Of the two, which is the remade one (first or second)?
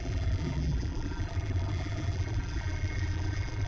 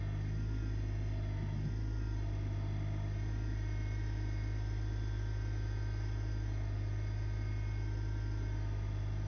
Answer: first